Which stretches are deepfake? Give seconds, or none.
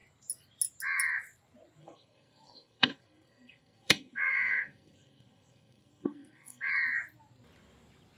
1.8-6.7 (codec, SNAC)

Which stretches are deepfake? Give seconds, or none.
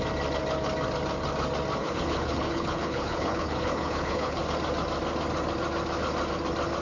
1.8-4.4 (codec, HILCodec)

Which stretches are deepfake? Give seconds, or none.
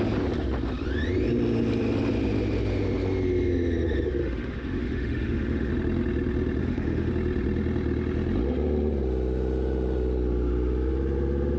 4.2-5.7 (autoencoder, DAC-VAE); 6.6-7.1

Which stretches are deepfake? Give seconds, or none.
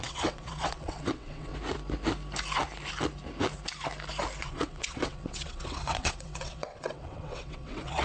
0.0-1.5 (vocoder, WaveNeXt); 4.4-8.0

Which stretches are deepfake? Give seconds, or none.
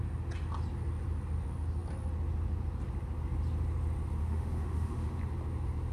4.2-5.2 (autoencoder, DAC-VAE)